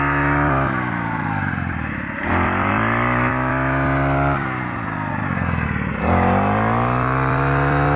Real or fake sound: real